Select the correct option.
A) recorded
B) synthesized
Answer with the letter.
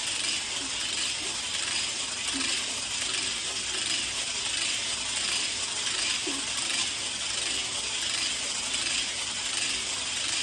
A